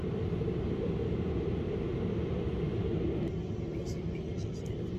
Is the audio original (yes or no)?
yes